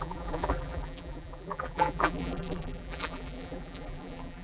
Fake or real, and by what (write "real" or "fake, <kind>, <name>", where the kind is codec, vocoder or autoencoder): fake, vocoder, BigVGAN v2